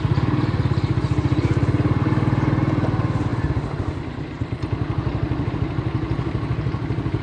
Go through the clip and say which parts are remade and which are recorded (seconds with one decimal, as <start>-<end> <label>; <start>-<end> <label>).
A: 0.0-7.2 recorded